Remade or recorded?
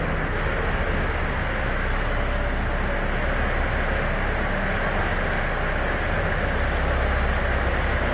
recorded